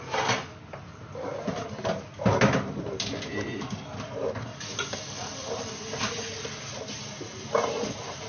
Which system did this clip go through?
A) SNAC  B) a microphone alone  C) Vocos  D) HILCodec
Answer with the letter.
B